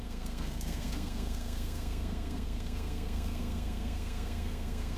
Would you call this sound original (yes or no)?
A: no